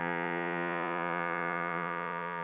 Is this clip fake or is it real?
fake